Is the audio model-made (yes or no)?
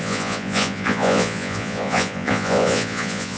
yes